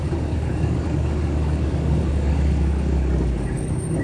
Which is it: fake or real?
fake